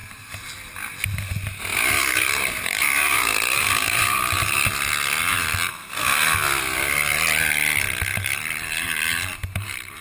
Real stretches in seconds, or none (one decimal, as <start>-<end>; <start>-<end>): 0.7-1.7; 4.7-8.1